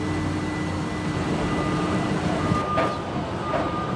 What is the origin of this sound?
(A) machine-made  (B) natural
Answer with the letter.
B